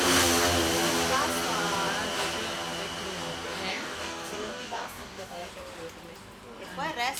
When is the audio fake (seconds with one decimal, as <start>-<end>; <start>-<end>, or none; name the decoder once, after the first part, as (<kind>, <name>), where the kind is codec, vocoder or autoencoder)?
3.7-5.5 (codec, DAC)